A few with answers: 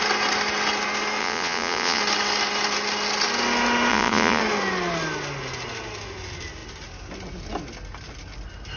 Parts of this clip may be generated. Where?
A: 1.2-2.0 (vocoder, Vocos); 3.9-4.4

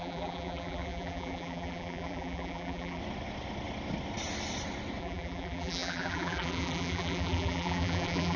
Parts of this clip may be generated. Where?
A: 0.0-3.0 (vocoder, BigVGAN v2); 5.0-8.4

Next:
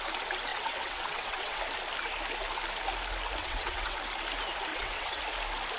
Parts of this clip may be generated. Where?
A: 0.5-1.6 (vocoder, WaveNeXt); 3.4-4.0; 4.7-5.2

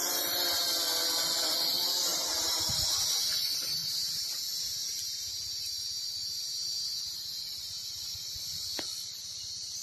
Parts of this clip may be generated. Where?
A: 2.1-2.9 (vocoder, BigVGAN v2); 3.8-4.6

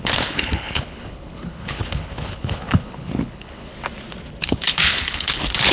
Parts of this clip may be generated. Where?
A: 0.0-3.7 (codec, HILCodec); 4.4-5.7